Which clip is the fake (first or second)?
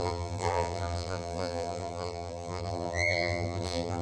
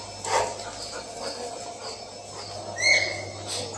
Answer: first